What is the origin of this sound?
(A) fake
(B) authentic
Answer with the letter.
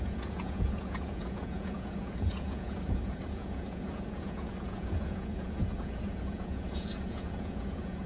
A